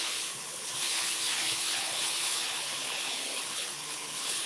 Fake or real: fake